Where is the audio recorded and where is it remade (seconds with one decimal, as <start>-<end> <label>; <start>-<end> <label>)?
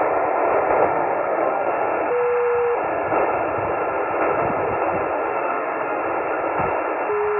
0.0-0.8 recorded; 0.8-1.9 remade; 1.9-5.3 recorded; 5.3-6.0 remade; 6.0-7.4 recorded